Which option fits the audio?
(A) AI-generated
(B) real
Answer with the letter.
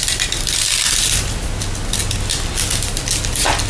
B